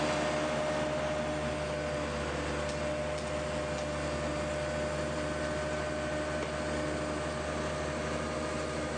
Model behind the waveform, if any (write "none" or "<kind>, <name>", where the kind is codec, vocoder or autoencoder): none